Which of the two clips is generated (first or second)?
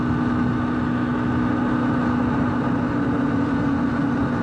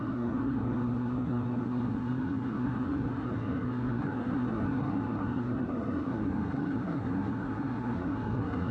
second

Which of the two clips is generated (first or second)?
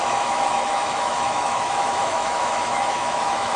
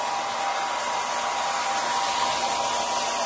first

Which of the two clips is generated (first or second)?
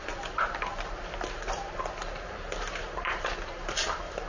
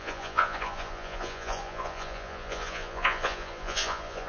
second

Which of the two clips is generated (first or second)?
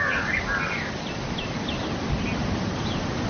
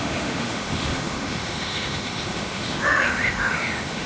second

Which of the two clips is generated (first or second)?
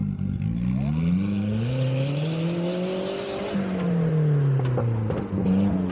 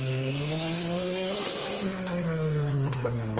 second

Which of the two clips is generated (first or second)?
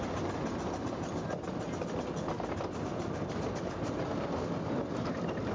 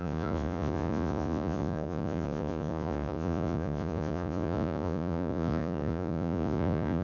second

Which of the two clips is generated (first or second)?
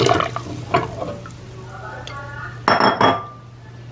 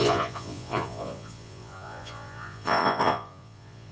second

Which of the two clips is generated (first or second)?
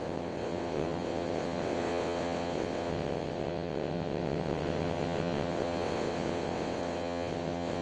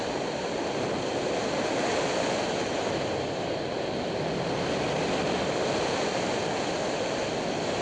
first